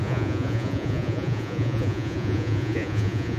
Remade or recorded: remade